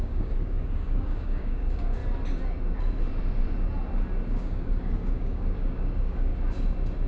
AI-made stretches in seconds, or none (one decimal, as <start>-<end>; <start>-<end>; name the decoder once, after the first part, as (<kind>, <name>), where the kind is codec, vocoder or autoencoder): 0.0-2.0 (codec, DAC); 4.3-6.3